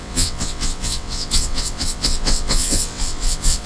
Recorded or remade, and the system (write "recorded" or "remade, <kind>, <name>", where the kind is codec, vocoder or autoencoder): remade, vocoder, WaveNeXt